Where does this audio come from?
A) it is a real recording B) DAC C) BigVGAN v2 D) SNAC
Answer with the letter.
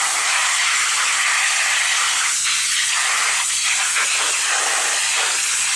A